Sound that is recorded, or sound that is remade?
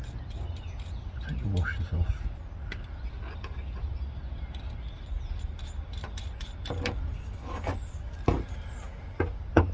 recorded